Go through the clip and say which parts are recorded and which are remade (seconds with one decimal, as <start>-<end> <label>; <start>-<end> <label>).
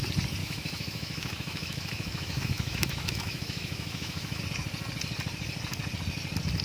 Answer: 0.0-0.4 recorded; 0.4-4.4 remade; 4.4-6.6 recorded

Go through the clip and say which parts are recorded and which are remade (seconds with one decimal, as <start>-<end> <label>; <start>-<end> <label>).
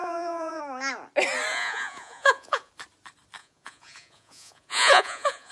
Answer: 0.0-0.6 remade; 0.6-1.5 recorded; 1.5-2.7 remade; 2.7-3.4 recorded; 3.4-5.5 remade